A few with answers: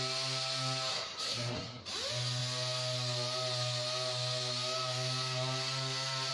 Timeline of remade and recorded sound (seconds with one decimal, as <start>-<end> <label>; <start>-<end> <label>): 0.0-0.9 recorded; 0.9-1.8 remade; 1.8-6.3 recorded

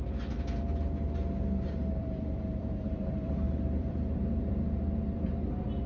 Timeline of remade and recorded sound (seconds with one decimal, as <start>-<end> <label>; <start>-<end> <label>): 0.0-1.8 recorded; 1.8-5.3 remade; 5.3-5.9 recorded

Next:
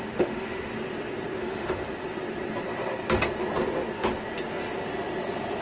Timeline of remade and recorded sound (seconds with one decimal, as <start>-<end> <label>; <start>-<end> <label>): 0.0-0.7 remade; 0.7-1.4 recorded; 1.4-1.8 remade; 1.8-5.6 recorded

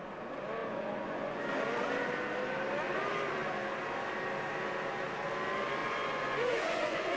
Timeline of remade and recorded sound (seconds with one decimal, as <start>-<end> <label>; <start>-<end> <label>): 0.0-0.6 recorded; 0.6-1.4 remade; 1.4-5.8 recorded; 5.8-7.2 remade